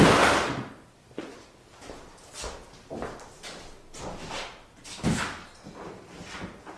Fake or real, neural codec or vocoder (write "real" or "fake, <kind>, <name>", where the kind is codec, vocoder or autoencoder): real